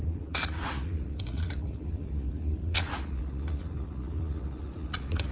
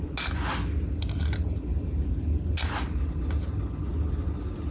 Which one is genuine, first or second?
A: second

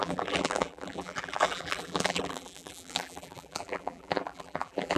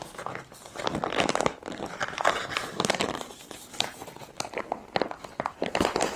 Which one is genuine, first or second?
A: second